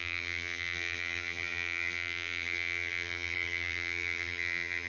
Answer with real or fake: fake